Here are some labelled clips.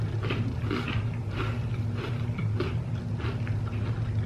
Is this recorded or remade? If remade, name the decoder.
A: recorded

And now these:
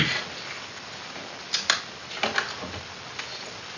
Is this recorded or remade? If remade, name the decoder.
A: recorded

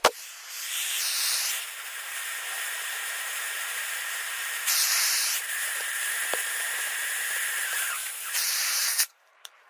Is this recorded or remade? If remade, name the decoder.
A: remade, vocoder, BigVGAN v2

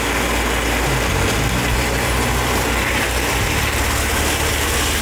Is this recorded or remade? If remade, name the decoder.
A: recorded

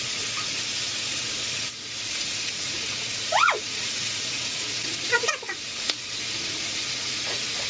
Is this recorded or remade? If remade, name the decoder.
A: remade, vocoder, Vocos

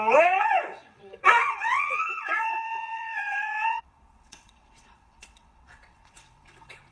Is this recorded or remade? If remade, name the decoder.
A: remade, vocoder, WaveNeXt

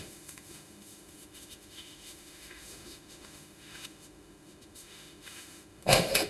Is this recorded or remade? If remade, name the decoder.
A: remade, autoencoder, DAC-VAE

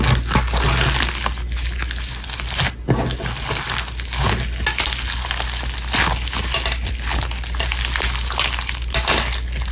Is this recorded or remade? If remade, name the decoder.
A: recorded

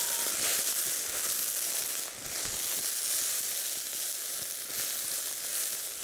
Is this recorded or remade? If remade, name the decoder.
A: recorded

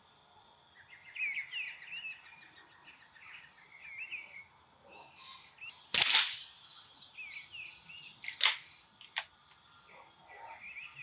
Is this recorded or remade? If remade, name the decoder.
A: recorded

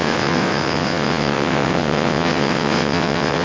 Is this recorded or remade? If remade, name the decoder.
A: remade, vocoder, WaveNeXt